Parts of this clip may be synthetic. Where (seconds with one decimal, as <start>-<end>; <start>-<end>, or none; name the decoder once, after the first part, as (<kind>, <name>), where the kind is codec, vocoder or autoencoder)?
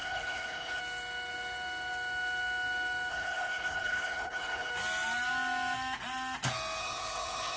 0.0-0.8 (codec, HILCodec); 3.1-4.7; 6.8-7.6